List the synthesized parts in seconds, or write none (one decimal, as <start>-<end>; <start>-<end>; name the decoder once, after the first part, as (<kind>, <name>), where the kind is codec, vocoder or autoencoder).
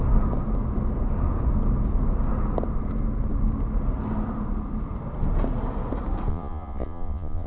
6.3-7.5 (vocoder, Vocos)